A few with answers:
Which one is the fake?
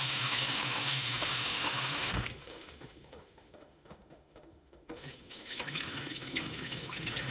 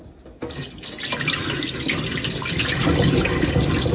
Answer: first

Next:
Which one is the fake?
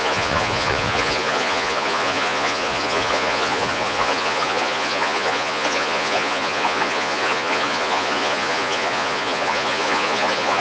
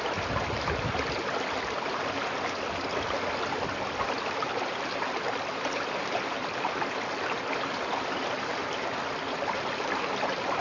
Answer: first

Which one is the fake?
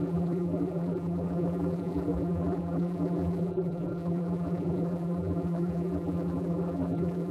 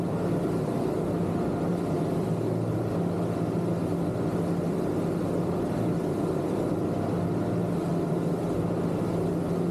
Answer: first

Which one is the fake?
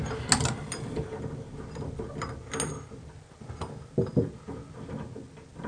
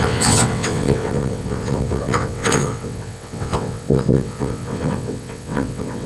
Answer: second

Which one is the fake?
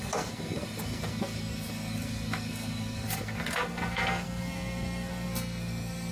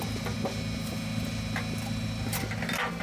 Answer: first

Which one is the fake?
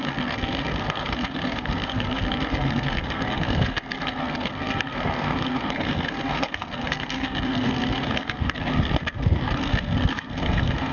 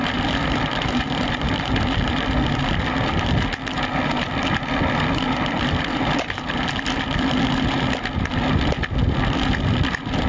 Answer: first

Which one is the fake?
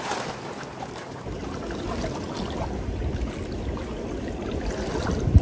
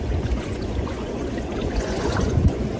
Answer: second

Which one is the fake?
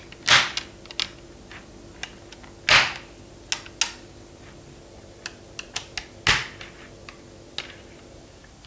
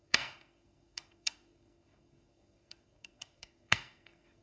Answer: second